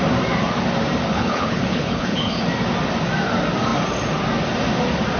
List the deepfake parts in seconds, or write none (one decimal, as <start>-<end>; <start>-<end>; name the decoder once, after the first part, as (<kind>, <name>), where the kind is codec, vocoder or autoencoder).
1.1-2.4 (codec, HILCodec)